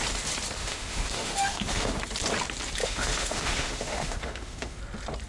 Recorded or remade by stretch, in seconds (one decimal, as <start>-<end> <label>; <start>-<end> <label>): 0.0-0.6 recorded; 0.6-2.0 remade; 2.0-2.8 recorded; 2.8-4.8 remade; 4.8-5.3 recorded